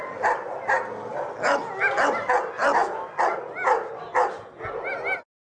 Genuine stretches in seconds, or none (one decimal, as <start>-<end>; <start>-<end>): 0.0-5.4